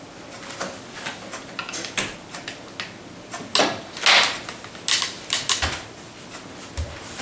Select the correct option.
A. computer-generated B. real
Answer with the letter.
B